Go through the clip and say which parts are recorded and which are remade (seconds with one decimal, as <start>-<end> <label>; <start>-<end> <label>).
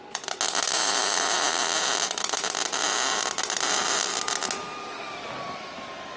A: 0.0-6.2 recorded